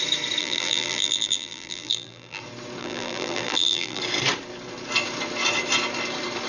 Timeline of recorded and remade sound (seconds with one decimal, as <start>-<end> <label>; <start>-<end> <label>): 0.0-0.4 recorded; 0.4-2.4 remade; 2.4-2.8 recorded; 2.8-4.0 remade; 4.0-6.5 recorded